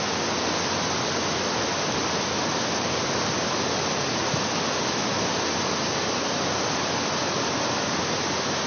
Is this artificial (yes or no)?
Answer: no